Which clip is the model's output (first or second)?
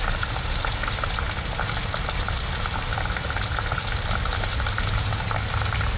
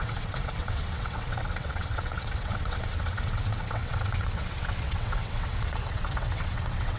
second